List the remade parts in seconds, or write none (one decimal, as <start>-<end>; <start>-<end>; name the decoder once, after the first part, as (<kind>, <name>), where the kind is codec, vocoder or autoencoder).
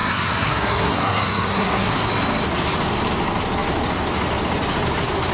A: 0.0-1.9 (codec, SNAC)